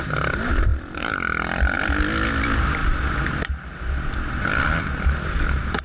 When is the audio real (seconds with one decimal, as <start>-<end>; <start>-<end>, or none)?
0.0-0.7; 1.2-5.8